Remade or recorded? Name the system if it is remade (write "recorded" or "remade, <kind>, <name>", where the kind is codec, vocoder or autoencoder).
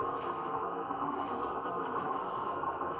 remade, codec, SNAC